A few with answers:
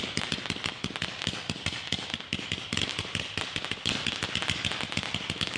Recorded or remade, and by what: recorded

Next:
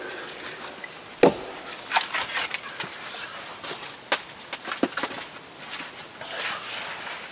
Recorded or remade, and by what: recorded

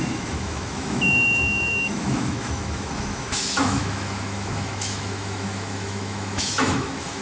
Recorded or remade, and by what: remade, autoencoder, DAC-VAE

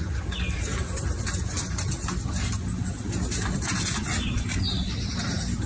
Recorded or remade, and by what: recorded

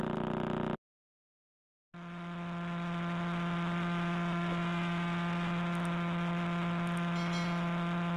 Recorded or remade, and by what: recorded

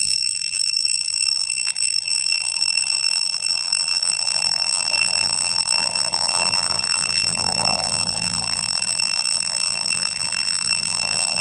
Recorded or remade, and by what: remade, vocoder, BigVGAN v2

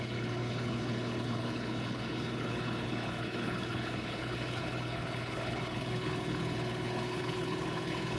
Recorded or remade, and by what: remade, codec, HILCodec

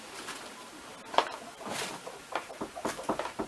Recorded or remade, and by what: recorded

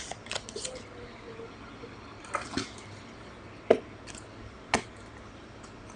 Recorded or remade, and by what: recorded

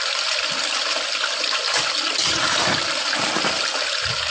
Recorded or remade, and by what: recorded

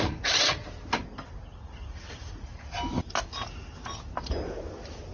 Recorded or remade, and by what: recorded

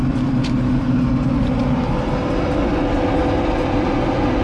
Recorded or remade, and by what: recorded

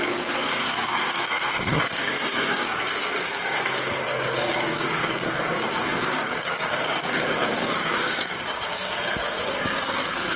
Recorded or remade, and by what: remade, codec, DAC